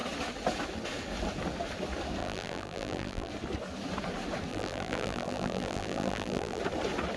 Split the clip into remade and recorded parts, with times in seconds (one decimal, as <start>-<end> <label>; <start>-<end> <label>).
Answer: 0.0-2.2 recorded; 2.2-3.3 remade; 3.3-4.5 recorded; 4.5-6.6 remade; 6.6-7.2 recorded